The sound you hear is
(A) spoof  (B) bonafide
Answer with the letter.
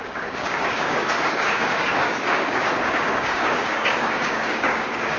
A